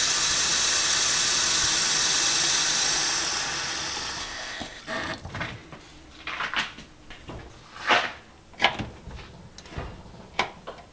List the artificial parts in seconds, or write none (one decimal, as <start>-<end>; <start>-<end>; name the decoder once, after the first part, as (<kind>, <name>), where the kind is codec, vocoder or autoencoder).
4.2-4.8 (codec, ZipCodec)